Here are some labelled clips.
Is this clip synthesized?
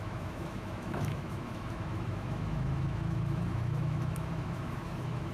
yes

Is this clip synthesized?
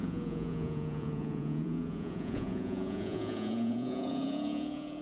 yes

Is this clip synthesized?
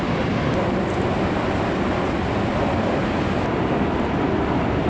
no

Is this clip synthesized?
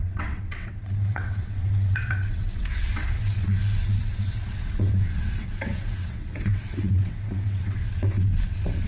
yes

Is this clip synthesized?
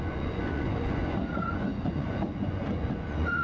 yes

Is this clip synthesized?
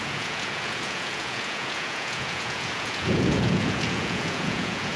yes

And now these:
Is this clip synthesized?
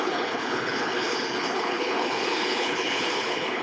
yes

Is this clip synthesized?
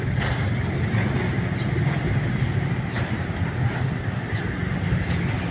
no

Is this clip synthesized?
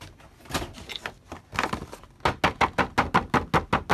no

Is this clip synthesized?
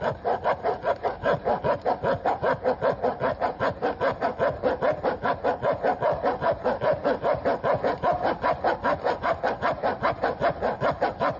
no